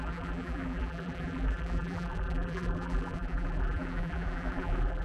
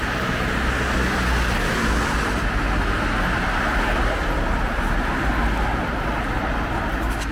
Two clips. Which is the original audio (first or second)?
second